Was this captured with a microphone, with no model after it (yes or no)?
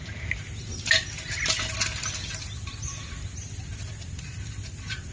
yes